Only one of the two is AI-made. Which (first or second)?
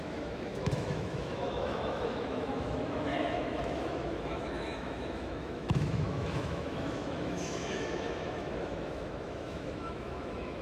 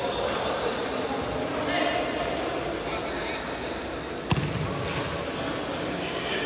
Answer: first